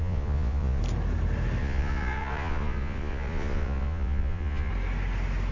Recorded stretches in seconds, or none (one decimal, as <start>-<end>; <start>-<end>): 0.8-1.6; 4.7-5.5